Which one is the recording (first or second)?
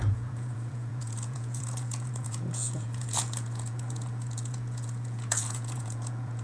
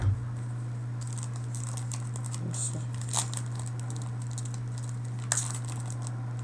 second